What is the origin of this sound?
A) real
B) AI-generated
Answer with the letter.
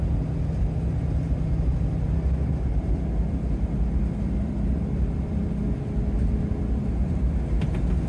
A